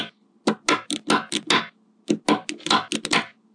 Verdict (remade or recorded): recorded